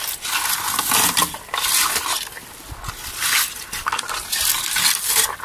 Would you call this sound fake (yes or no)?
no